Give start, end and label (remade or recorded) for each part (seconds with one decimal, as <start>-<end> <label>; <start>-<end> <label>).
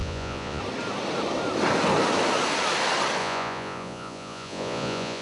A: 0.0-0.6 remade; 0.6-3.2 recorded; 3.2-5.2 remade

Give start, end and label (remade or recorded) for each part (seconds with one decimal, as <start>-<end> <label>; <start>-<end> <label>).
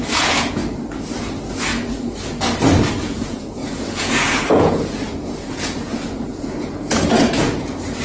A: 0.0-0.6 remade; 0.6-3.0 recorded; 3.0-8.0 remade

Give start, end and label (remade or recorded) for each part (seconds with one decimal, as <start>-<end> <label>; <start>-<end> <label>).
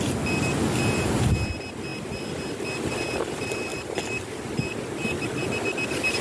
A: 0.0-6.2 recorded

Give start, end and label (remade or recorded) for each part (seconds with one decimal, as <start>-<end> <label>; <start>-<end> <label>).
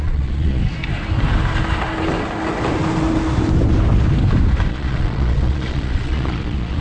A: 0.0-0.6 remade; 0.6-4.7 recorded; 4.7-6.8 remade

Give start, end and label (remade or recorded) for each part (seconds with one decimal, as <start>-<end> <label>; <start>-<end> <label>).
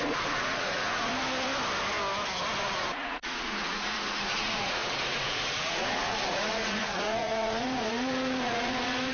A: 0.0-1.1 remade; 1.1-2.6 recorded; 2.6-9.1 remade